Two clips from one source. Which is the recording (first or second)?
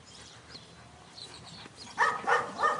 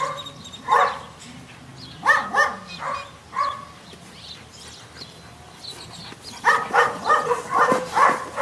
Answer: second